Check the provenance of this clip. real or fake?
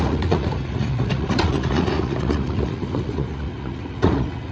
fake